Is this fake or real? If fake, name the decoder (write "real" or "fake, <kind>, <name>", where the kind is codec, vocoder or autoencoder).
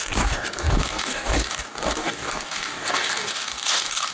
fake, codec, DAC